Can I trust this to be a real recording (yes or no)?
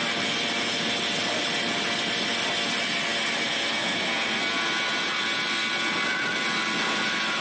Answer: yes